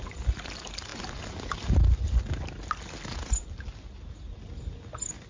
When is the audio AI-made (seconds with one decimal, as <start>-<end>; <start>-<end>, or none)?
none